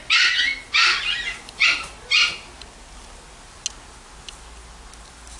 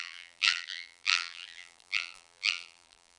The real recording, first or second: first